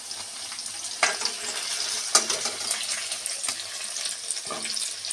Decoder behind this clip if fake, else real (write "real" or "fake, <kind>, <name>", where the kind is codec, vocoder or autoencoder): real